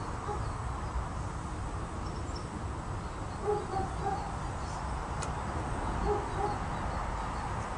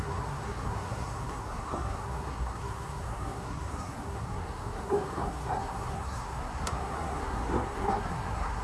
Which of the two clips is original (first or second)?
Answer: first